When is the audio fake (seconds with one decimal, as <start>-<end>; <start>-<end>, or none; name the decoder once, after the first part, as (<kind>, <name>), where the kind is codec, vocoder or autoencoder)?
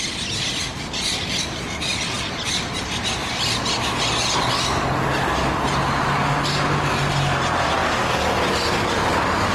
none